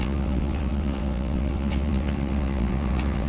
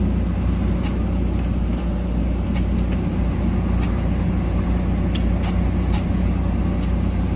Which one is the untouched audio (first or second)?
second